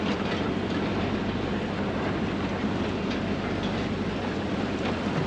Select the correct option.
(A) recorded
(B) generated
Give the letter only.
A